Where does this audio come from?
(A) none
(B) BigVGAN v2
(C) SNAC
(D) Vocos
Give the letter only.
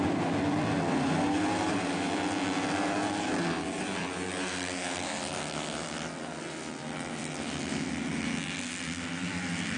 B